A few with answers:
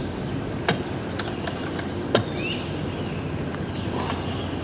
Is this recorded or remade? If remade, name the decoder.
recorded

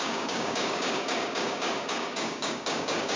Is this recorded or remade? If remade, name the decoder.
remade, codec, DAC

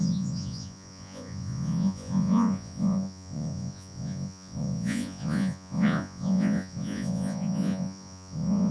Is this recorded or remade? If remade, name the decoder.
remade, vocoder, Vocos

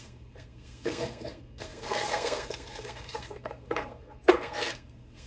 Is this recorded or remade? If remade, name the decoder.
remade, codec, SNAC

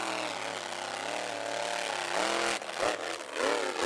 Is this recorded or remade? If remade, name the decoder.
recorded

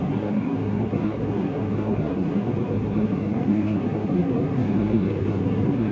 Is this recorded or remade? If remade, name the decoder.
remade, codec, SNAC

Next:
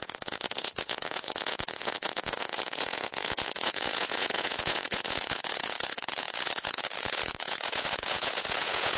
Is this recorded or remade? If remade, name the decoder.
remade, vocoder, Vocos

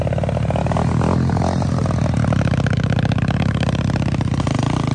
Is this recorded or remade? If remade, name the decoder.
recorded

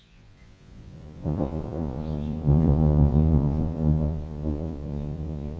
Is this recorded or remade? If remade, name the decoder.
remade, vocoder, Vocos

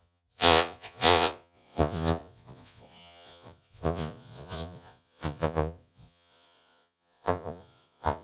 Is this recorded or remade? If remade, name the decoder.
remade, vocoder, Vocos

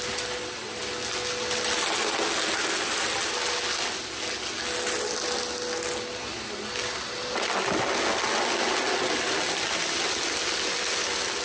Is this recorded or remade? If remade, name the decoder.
recorded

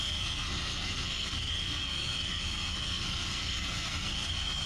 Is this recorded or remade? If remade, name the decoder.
remade, codec, SNAC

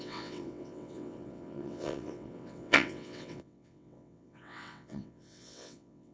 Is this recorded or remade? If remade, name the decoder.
remade, vocoder, WaveNeXt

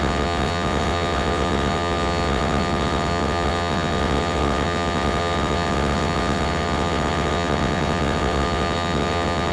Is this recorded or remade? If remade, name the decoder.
remade, vocoder, WaveNeXt